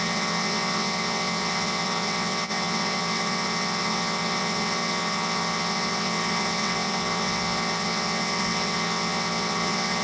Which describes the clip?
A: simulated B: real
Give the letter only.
A